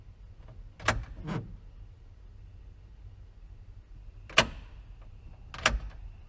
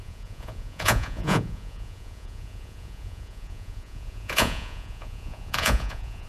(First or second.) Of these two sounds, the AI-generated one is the second